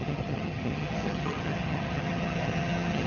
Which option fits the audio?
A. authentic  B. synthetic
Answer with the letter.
B